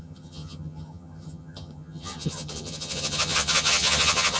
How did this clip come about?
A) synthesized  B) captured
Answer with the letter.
A